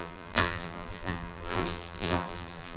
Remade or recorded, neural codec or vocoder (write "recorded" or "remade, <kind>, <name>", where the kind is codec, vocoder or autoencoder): remade, vocoder, BigVGAN v2